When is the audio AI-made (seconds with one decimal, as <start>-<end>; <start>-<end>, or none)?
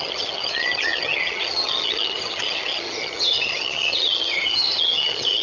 0.0-5.4